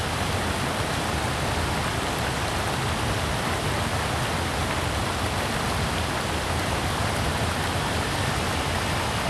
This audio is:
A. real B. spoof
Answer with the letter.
A